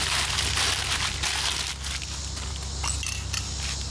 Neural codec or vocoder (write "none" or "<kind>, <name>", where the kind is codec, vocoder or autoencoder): none